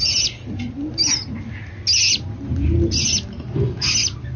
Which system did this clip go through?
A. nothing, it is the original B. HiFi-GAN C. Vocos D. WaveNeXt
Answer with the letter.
A